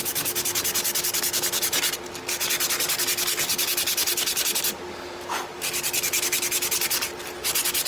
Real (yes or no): yes